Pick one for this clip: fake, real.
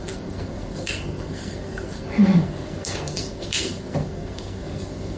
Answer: fake